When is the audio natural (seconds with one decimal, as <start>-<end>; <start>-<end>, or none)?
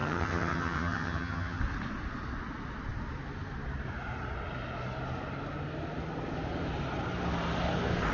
1.6-8.1